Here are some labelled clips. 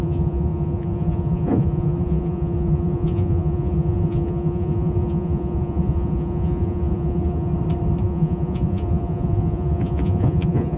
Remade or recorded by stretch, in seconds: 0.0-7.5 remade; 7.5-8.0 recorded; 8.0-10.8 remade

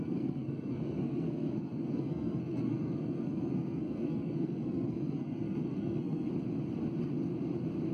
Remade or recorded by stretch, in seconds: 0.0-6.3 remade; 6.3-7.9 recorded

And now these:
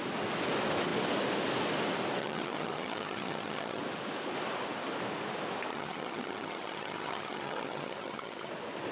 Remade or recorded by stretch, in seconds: 0.0-2.2 recorded; 2.2-3.8 remade; 3.8-5.7 recorded; 5.7-8.5 remade; 8.5-8.9 recorded